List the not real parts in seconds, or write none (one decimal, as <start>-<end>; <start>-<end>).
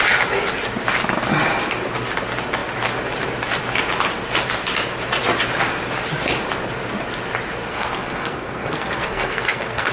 7.7-9.9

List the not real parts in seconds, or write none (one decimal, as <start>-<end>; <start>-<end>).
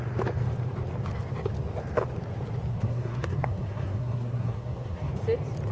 2.7-5.1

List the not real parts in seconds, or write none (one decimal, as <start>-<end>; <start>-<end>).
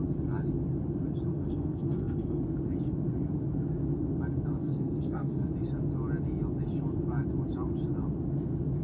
1.3-2.4; 4.6-5.5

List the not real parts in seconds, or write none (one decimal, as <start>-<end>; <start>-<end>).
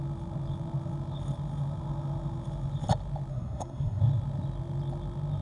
3.3-4.0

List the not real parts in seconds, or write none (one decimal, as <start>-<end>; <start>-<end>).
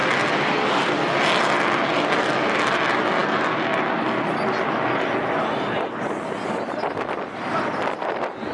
none